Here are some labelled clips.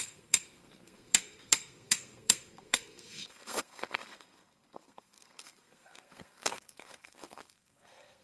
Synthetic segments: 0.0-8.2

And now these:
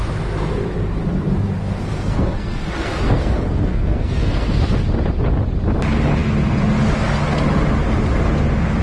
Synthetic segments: 1.6-4.6